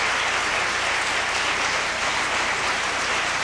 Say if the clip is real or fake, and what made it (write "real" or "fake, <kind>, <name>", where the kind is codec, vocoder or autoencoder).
real